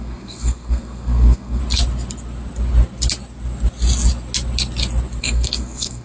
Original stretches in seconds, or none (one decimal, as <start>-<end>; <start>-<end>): 1.6-5.2